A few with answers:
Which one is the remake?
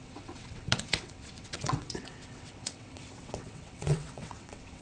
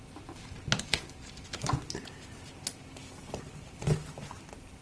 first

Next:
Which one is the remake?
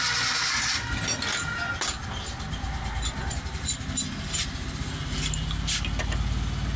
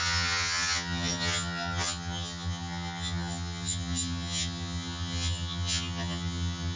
second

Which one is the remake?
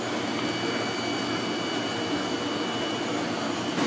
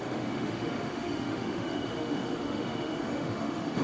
second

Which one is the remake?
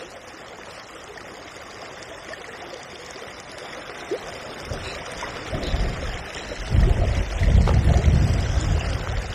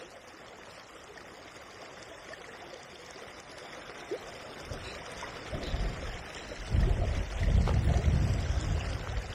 first